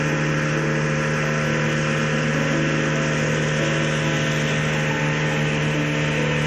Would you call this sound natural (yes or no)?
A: yes